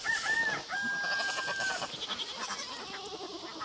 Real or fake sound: real